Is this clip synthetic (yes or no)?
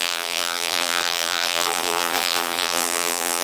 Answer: yes